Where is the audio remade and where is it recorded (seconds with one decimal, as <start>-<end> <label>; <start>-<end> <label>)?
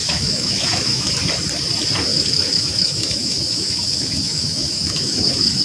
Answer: 0.0-1.1 remade; 1.1-2.1 recorded; 2.1-5.6 remade